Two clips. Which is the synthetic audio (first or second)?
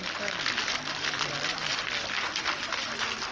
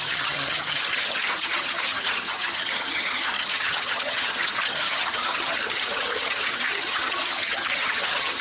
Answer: second